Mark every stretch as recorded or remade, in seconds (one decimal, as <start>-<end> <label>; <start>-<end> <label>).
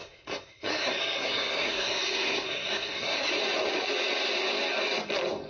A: 0.0-3.3 remade; 3.3-5.5 recorded